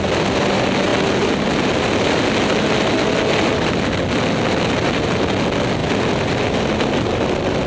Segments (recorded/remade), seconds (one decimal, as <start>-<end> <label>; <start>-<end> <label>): 0.0-7.7 recorded